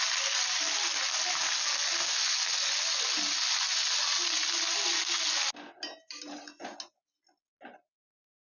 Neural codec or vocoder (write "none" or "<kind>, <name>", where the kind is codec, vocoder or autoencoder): none